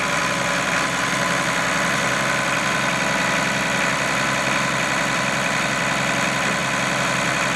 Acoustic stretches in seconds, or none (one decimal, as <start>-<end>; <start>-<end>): 0.0-7.6